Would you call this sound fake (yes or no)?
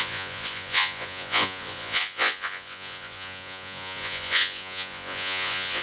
yes